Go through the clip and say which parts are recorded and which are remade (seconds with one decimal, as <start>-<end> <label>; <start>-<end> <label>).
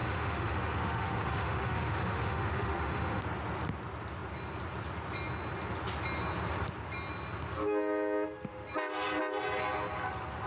0.0-3.2 remade; 3.2-10.5 recorded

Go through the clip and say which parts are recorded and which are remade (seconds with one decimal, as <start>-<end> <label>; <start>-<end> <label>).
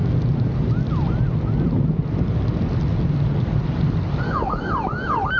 0.0-5.4 recorded